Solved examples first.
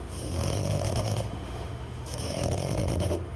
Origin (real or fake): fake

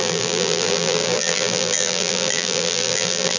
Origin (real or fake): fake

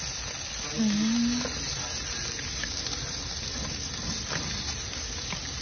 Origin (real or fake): real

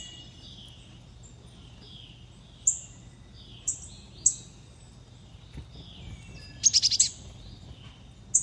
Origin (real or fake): real